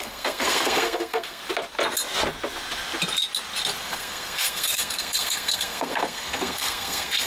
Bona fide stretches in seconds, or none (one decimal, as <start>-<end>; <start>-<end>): 1.4-3.8

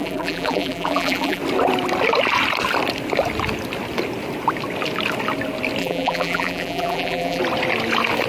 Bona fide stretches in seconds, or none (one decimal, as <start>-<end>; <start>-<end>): 1.4-5.8; 7.4-8.3

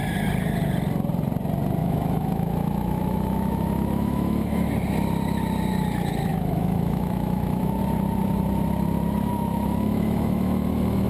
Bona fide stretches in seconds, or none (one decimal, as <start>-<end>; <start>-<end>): 0.0-1.8; 4.7-6.3; 7.8-9.3

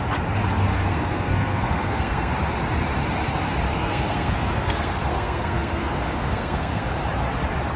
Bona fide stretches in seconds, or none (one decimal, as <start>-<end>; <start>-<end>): 0.0-0.7; 2.3-3.8; 6.9-7.8

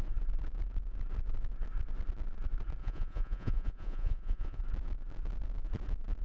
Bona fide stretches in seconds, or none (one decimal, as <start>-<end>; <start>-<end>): 0.0-2.8; 4.6-6.2

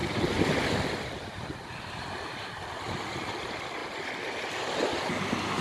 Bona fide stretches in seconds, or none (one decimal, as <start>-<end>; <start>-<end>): 3.8-5.6